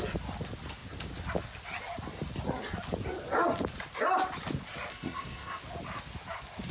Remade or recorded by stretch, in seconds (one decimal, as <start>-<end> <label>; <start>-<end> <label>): 0.0-4.9 recorded; 4.9-5.6 remade; 5.6-6.7 recorded